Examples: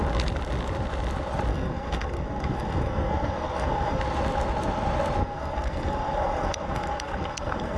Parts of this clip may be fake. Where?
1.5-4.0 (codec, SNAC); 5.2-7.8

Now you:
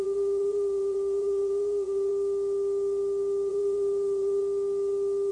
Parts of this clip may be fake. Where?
0.0-2.1 (vocoder, Vocos); 3.5-4.4

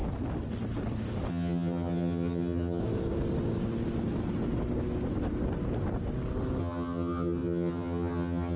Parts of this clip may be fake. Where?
1.3-2.8 (vocoder, HiFi-GAN); 6.6-8.6

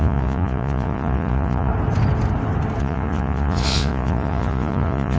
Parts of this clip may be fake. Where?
0.0-1.7 (vocoder, Vocos); 2.8-5.2